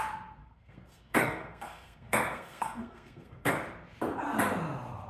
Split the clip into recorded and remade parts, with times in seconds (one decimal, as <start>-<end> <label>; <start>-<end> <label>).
0.0-0.4 recorded; 0.4-3.5 remade; 3.5-5.1 recorded